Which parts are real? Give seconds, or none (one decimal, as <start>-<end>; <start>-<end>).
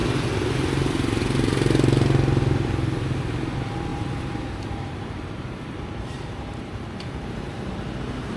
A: 0.0-3.9; 7.7-8.4